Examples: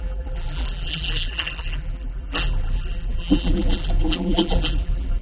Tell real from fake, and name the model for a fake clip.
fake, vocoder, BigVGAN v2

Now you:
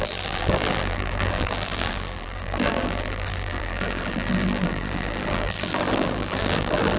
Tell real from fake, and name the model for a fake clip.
fake, vocoder, BigVGAN v2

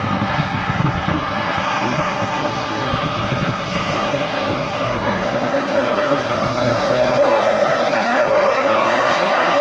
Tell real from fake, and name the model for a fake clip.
fake, codec, SNAC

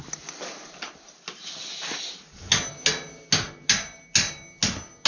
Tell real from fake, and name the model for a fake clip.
real